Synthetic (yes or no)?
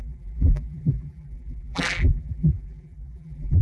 yes